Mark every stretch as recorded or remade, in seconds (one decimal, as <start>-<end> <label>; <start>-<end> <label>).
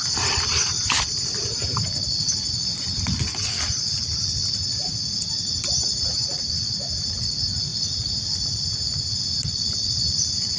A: 0.0-10.6 recorded